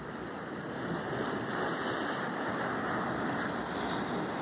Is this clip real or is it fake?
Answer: real